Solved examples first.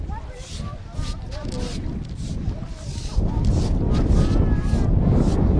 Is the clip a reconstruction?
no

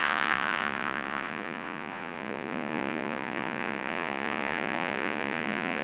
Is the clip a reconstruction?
yes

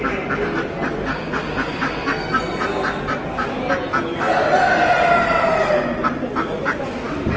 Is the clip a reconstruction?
no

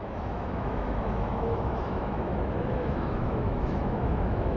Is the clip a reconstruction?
yes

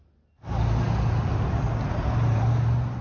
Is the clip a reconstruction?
no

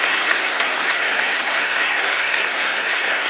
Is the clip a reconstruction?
yes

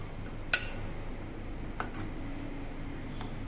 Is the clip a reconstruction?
no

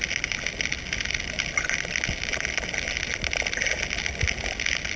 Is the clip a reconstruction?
no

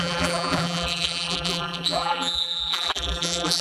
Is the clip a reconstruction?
yes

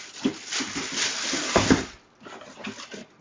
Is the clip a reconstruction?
no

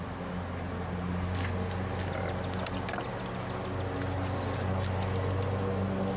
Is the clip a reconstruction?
no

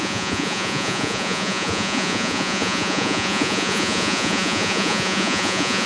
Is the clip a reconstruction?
yes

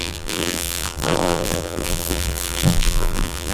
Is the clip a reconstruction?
yes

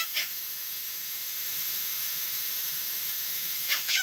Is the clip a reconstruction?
yes